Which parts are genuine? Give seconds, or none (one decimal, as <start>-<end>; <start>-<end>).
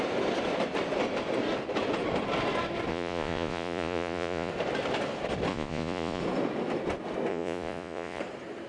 0.0-2.9; 4.5-5.5; 6.2-7.3; 8.2-8.7